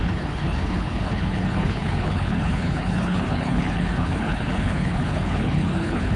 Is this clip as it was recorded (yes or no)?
no